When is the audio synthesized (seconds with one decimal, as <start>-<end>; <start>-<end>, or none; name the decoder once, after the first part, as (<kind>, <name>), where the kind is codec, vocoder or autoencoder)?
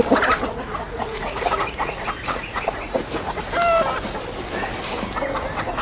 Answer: 0.5-3.4 (vocoder, Vocos)